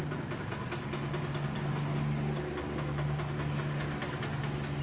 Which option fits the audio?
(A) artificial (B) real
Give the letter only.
B